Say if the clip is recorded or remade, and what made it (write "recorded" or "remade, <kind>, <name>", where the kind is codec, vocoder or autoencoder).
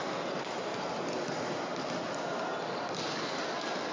recorded